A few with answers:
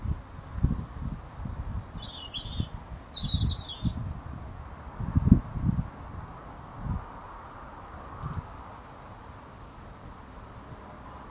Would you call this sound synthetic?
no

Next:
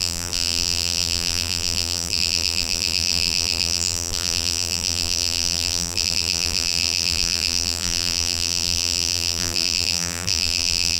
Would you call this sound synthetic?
yes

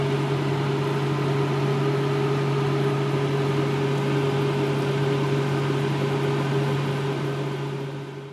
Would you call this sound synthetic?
no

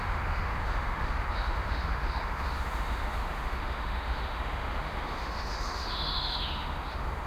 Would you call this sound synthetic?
yes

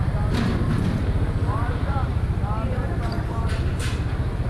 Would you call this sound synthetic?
yes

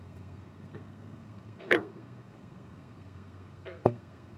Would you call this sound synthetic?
yes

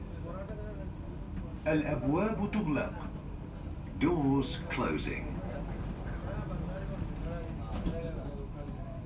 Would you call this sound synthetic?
no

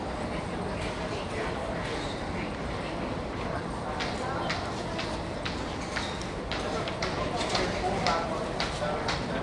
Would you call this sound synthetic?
no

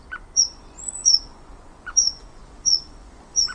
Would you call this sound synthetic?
yes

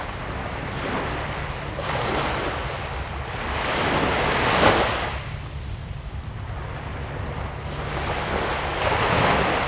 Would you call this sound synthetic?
no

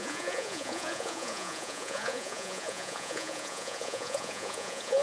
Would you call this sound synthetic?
yes